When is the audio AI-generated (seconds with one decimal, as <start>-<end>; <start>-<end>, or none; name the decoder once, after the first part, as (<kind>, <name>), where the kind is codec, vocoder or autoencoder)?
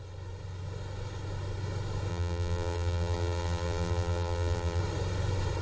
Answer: 2.1-4.8 (vocoder, BigVGAN v2)